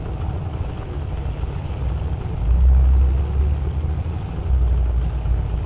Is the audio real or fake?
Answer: real